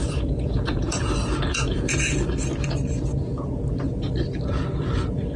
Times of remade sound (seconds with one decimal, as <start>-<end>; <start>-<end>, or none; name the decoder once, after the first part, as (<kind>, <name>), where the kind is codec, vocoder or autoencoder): 0.0-1.1 (vocoder, Vocos); 1.5-2.1